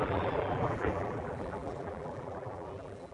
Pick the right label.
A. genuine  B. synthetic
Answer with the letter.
B